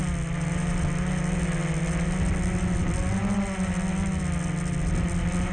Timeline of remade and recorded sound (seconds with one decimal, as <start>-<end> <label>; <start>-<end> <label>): 0.0-5.5 recorded